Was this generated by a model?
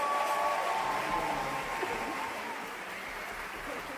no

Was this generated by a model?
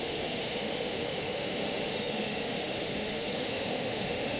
yes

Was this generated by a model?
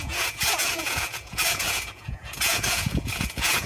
yes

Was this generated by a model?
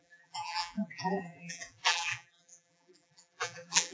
yes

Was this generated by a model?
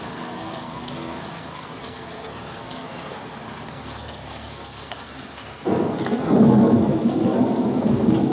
yes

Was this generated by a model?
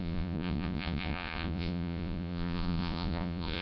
yes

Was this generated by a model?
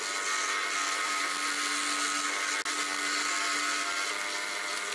no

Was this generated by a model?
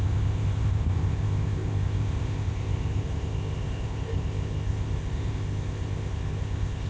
yes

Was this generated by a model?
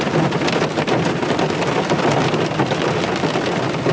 no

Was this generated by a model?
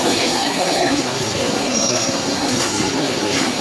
yes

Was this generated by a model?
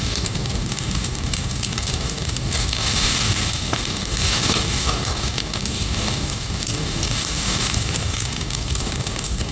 yes